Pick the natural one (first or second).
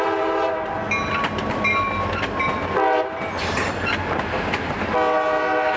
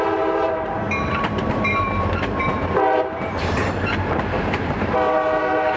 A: first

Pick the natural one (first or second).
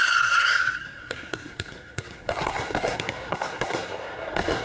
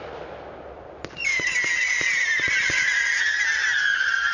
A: second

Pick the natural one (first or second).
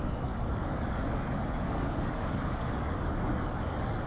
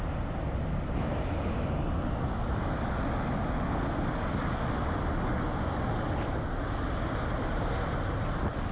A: second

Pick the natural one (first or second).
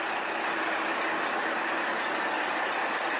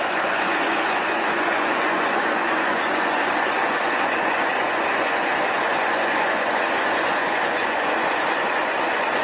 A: first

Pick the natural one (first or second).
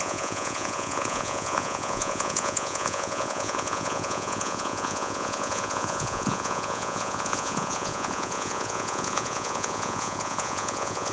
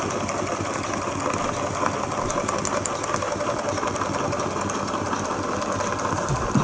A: second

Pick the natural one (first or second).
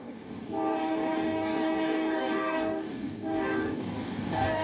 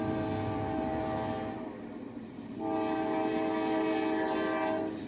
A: second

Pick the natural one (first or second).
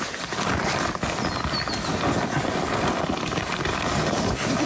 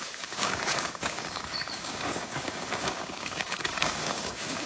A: first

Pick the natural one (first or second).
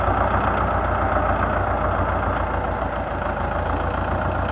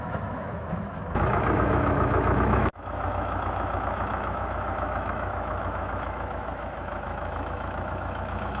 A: first